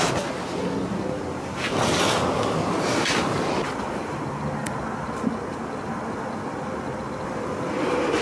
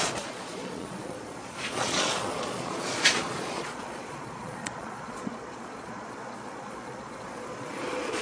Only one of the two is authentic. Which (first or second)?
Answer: first